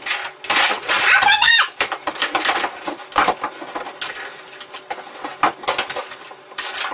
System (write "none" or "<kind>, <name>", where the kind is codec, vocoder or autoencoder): none